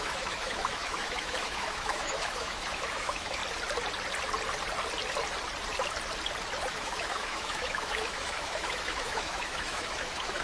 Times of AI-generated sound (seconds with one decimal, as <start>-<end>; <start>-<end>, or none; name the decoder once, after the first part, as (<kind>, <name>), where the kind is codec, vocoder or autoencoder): 0.0-3.4 (autoencoder, DAC-VAE); 6.7-10.4